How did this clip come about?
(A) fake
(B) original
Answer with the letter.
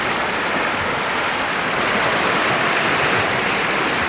B